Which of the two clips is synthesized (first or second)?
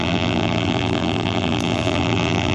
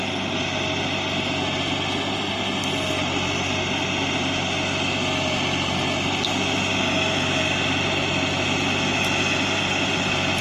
first